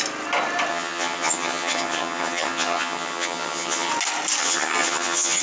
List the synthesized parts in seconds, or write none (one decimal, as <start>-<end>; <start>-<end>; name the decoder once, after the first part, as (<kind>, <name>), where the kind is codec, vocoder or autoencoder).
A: 0.7-3.9 (vocoder, HiFi-GAN); 4.4-5.4